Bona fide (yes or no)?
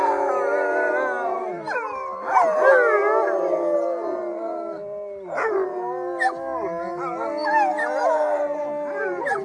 yes